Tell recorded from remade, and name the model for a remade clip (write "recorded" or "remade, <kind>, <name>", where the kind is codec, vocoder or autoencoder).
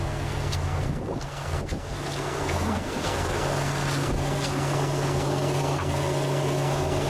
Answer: remade, codec, SNAC